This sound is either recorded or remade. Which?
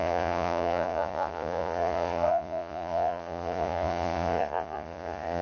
remade